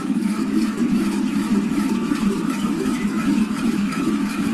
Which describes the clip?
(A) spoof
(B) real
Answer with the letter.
A